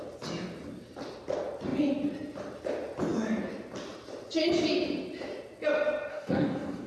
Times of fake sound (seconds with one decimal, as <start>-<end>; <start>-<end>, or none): 6.1-6.9